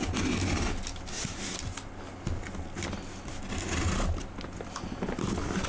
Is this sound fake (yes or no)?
no